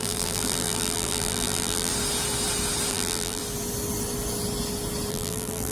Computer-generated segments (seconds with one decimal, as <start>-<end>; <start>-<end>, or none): 0.0-1.9; 2.9-3.4; 5.1-5.7